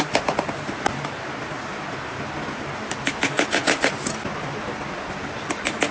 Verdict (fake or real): real